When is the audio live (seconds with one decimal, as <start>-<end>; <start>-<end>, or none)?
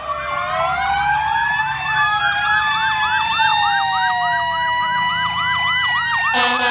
0.0-1.6; 2.2-3.5; 5.1-6.7